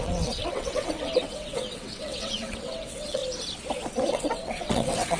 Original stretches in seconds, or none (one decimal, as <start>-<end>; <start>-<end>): 3.2-4.1